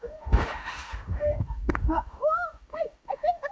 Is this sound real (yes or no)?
no